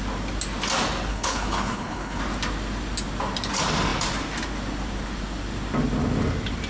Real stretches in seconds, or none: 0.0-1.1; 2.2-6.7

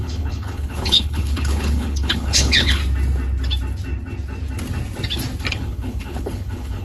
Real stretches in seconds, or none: 2.8-5.5

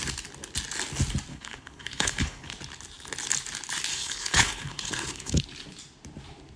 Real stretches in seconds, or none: 0.0-1.3; 2.5-3.9; 5.4-6.6

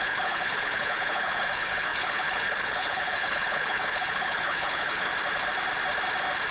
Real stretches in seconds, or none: 5.1-6.5

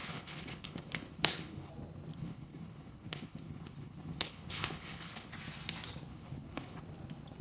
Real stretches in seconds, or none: 1.7-2.1; 5.3-6.1; 6.8-7.4

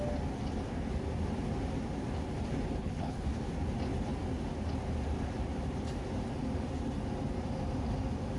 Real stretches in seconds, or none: 0.0-2.8; 3.4-8.4